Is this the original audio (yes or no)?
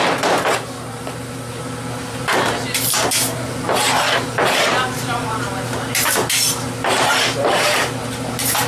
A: no